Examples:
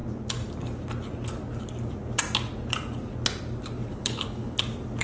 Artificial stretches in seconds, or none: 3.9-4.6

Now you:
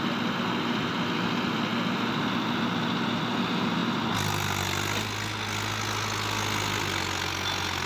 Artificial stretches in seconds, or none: none

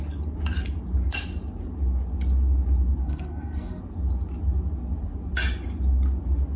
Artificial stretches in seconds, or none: 3.0-3.8